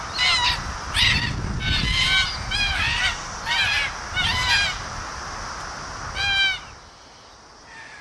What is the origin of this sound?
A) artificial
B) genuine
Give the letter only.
B